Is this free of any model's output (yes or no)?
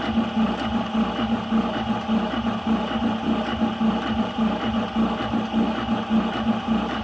yes